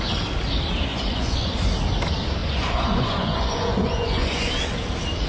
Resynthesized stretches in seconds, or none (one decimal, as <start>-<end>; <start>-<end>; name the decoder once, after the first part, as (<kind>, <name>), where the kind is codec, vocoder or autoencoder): 0.9-1.5 (vocoder, Vocos); 2.4-4.5

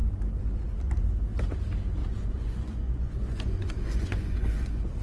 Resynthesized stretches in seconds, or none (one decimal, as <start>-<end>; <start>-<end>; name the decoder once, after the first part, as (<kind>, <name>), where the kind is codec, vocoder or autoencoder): 2.0-5.0 (vocoder, Vocos)

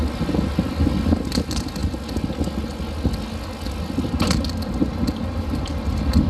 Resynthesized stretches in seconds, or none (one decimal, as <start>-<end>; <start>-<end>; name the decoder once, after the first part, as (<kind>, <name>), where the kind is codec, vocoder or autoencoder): none

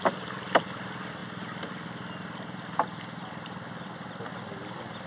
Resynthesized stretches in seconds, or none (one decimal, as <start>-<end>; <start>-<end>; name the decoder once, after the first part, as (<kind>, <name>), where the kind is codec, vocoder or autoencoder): none

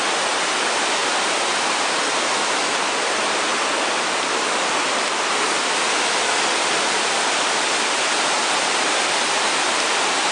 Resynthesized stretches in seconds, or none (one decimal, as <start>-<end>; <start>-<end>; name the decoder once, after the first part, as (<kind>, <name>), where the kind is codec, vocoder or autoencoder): 1.0-2.5 (vocoder, BigVGAN v2)

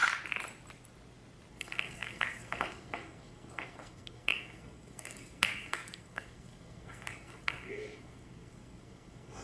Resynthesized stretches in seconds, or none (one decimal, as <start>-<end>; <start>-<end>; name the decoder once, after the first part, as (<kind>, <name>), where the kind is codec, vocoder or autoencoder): 1.5-9.4 (codec, SNAC)

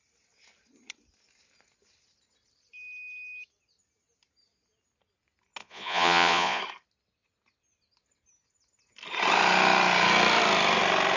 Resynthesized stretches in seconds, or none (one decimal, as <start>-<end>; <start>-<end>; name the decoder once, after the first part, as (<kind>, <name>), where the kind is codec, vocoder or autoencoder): 5.6-6.6 (vocoder, Vocos)